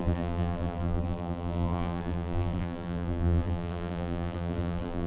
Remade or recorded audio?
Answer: remade